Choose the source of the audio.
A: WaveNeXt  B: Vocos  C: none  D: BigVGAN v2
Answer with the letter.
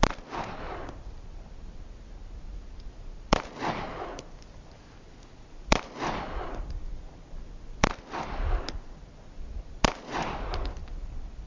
C